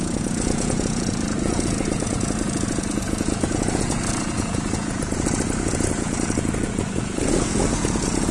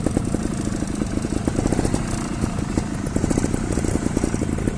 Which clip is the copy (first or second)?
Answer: first